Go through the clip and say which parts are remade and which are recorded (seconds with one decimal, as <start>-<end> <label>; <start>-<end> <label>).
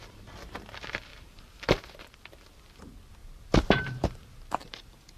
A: 0.0-1.1 recorded; 1.1-2.0 remade; 2.0-3.2 recorded; 3.2-5.2 remade